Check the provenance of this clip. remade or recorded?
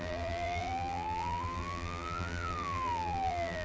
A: remade